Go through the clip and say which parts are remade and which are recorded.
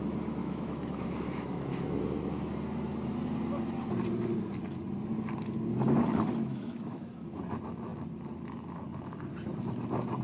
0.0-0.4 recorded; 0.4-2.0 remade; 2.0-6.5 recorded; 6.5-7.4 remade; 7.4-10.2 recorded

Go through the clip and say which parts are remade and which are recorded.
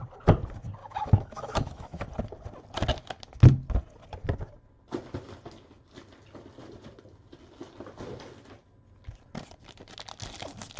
0.0-0.8 recorded; 0.8-2.1 remade; 2.1-10.8 recorded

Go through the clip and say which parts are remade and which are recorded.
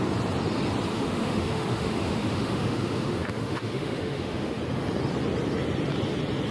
0.0-0.9 recorded; 0.9-4.6 remade; 4.6-6.5 recorded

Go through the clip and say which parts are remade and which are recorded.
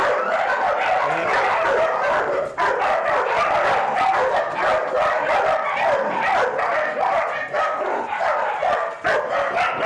0.0-9.9 recorded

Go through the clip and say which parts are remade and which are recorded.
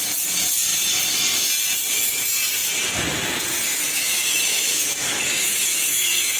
0.0-3.7 recorded; 3.7-6.4 remade